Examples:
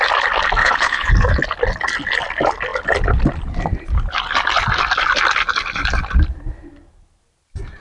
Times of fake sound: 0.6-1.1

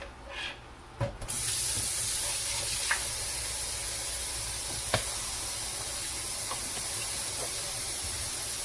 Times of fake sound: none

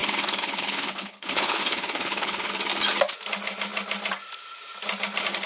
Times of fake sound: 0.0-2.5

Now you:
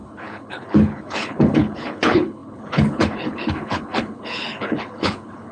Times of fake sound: 0.0-5.5

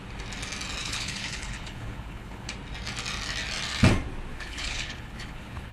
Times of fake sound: 0.8-2.5; 4.3-5.7

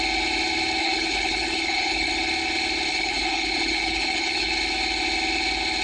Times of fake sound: 0.8-2.1; 2.9-4.5

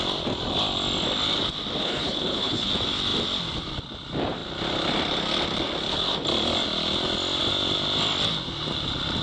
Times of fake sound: 1.8-2.7